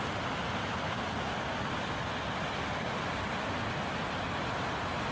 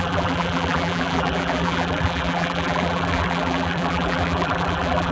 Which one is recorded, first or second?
first